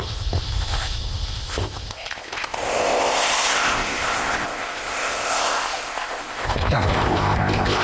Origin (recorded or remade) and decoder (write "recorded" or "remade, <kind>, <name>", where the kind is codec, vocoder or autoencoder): remade, codec, ZipCodec